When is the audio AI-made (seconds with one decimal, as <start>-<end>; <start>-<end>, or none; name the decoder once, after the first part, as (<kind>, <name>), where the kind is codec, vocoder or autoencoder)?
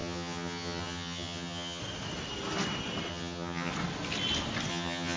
0.0-1.8 (vocoder, HiFi-GAN); 3.1-3.7; 4.7-5.2